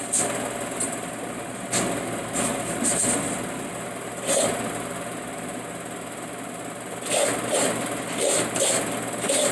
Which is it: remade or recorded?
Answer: recorded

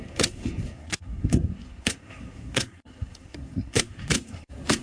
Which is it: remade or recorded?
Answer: remade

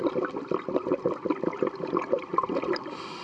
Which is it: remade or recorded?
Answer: recorded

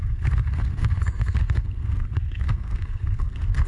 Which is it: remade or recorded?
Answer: remade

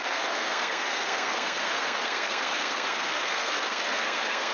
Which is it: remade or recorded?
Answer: remade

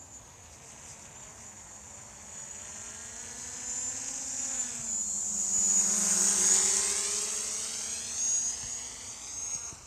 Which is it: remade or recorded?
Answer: recorded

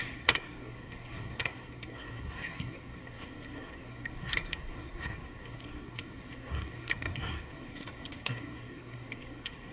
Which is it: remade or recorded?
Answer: remade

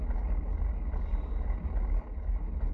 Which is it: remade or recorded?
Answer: recorded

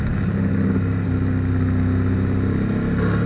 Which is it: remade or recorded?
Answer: recorded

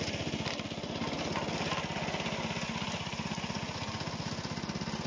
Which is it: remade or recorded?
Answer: recorded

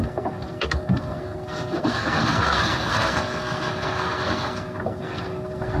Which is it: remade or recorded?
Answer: remade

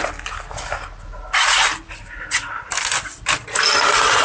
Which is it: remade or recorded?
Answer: recorded